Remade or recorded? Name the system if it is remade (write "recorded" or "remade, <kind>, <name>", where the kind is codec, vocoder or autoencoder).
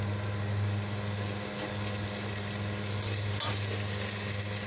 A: recorded